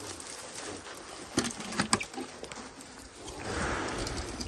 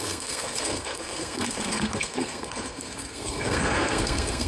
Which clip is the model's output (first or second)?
second